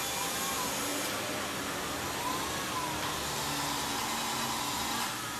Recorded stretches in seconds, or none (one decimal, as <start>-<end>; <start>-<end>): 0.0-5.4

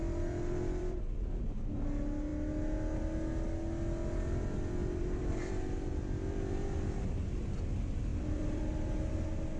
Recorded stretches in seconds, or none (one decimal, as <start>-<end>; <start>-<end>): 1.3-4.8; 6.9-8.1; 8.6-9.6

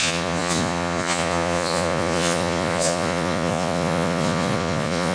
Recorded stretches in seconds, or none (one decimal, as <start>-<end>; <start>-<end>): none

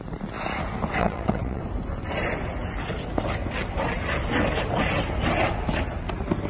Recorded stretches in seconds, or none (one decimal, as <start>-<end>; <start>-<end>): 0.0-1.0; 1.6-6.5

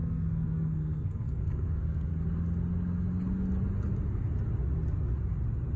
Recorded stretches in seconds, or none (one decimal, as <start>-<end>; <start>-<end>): 2.1-5.8

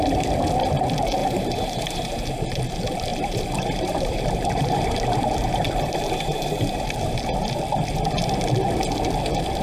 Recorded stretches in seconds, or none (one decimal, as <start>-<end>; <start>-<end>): 0.0-1.2; 2.6-3.1; 7.2-9.6